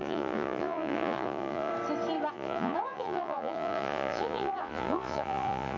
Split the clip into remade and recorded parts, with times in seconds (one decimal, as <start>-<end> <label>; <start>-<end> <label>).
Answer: 0.0-1.7 remade; 1.7-2.3 recorded; 2.3-5.8 remade